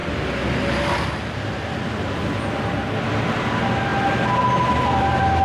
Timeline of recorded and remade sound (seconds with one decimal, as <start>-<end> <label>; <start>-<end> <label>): 0.0-5.4 recorded